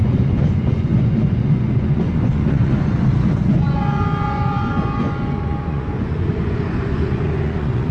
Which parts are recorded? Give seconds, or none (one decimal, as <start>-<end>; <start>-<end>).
none